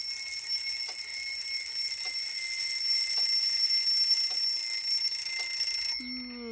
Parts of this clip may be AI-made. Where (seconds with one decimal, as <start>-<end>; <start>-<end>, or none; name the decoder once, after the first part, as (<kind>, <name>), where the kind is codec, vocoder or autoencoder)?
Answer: none